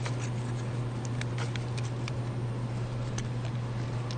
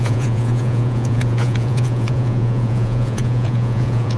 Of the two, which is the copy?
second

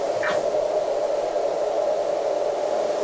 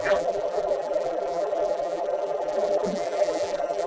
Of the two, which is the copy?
second